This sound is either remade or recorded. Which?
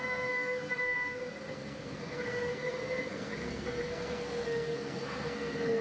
remade